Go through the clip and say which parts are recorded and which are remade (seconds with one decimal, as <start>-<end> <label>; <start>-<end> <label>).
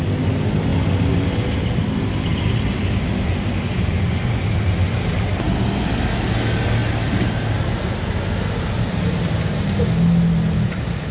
0.0-11.1 recorded